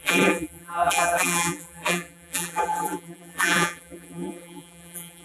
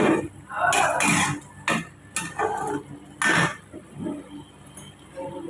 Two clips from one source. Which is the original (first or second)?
second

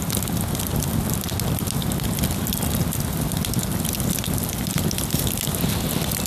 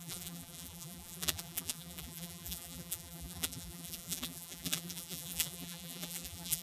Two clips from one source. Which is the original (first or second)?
first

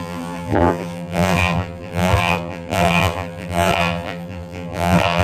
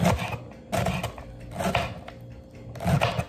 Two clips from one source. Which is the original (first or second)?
second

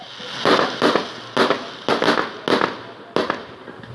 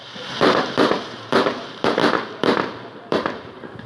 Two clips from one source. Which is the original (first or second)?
first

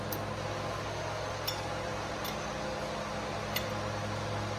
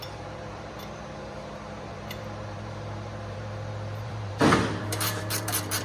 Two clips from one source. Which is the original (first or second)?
first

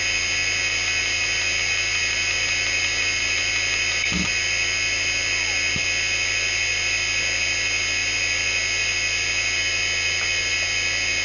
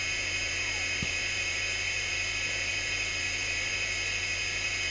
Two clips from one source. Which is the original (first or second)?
first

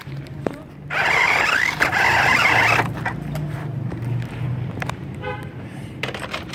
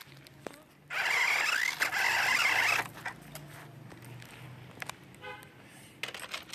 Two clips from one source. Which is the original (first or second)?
second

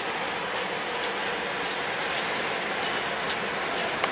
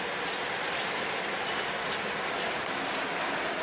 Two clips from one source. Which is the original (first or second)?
first